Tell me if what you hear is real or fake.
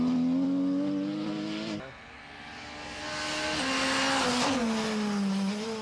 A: real